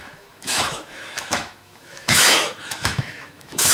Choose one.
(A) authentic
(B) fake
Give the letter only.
B